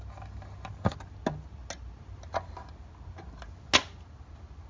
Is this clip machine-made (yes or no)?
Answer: no